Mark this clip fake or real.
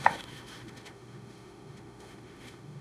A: fake